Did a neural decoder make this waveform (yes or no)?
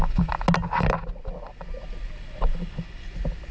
no